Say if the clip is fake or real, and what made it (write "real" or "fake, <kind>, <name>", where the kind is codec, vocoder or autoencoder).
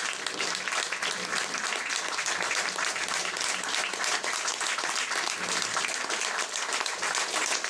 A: real